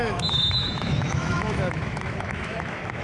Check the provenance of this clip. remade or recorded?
remade